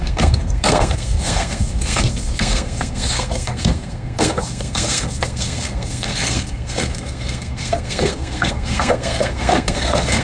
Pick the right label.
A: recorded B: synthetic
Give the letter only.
B